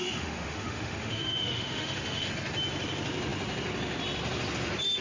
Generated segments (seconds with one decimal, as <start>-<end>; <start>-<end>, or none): 0.0-2.3